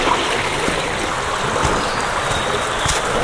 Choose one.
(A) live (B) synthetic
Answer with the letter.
A